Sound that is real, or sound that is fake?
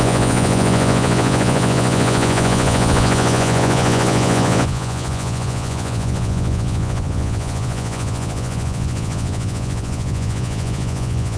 fake